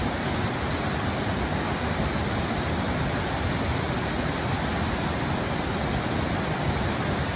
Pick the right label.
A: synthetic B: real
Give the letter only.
B